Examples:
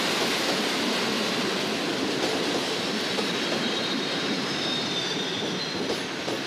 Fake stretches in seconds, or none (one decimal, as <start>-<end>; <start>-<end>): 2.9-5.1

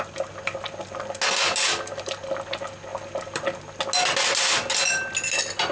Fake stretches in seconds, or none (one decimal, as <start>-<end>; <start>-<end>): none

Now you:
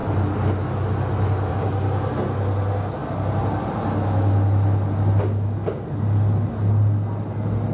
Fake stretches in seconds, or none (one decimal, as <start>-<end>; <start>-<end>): none